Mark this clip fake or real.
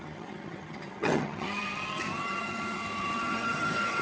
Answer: fake